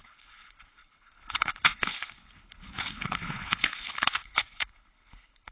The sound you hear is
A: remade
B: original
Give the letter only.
A